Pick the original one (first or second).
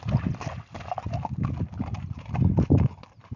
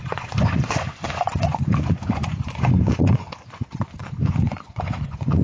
first